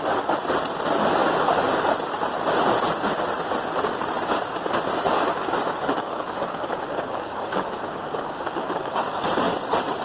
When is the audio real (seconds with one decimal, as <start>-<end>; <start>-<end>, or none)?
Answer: 0.0-4.9; 9.2-10.0

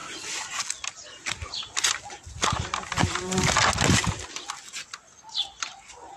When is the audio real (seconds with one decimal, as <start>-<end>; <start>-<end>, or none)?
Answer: 0.0-6.2

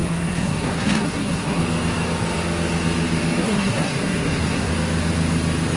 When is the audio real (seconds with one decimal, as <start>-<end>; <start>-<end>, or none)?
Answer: 1.6-3.4; 4.7-5.8